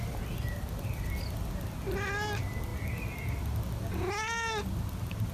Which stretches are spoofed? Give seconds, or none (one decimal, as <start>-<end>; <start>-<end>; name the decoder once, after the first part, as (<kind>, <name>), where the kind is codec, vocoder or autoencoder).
none